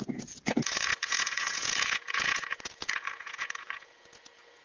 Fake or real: fake